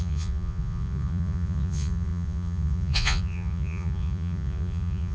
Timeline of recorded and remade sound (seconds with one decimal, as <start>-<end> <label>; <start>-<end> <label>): 0.0-5.1 remade